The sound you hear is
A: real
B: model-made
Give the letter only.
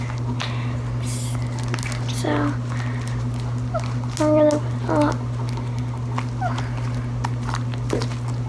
A